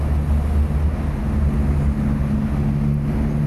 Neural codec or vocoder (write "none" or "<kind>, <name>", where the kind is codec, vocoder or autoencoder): none